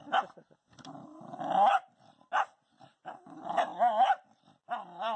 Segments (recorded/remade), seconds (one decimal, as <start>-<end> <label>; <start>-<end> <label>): 0.0-3.7 remade; 3.7-4.4 recorded; 4.4-5.2 remade